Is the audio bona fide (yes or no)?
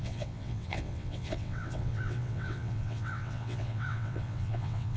no